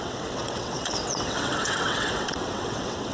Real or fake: fake